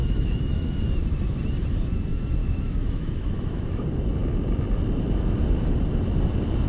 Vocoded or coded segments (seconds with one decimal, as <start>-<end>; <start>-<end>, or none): 0.0-0.7; 2.4-3.7